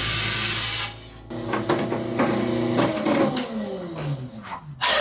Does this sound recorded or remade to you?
recorded